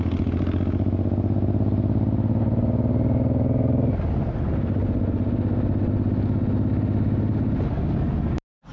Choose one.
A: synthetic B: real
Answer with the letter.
B